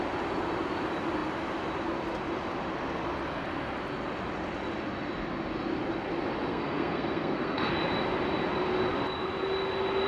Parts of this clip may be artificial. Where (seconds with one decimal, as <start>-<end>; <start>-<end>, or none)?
6.5-7.7

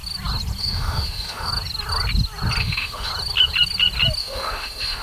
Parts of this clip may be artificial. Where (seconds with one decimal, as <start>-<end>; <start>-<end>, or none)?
0.6-1.5; 2.6-3.1; 4.2-5.0

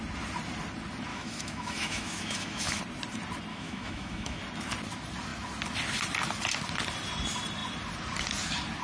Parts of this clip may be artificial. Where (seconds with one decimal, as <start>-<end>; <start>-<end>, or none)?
1.1-2.8; 3.5-4.4